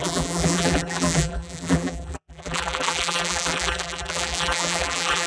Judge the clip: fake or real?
fake